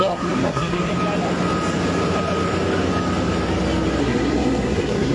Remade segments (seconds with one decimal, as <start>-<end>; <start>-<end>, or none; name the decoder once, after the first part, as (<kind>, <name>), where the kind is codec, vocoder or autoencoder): 0.0-0.9 (codec, SNAC); 4.0-5.1